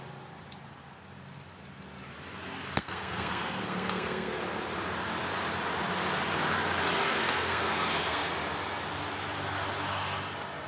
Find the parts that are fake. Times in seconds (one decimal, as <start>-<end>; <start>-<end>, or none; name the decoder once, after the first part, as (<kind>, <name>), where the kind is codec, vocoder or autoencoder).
2.8-4.4 (codec, SNAC); 7.2-8.3